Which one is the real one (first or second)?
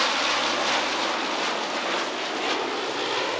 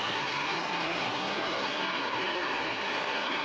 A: first